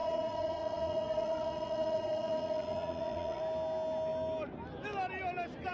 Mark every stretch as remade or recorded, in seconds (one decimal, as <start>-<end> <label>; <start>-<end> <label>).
0.0-3.4 remade; 3.4-5.7 recorded